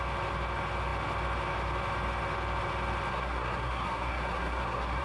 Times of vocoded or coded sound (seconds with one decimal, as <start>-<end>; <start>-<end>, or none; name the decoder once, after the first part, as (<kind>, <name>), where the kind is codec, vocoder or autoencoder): 3.1-5.0 (codec, SNAC)